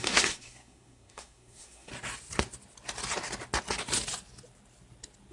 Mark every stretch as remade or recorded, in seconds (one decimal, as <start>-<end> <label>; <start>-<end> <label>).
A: 0.0-1.9 remade; 1.9-5.3 recorded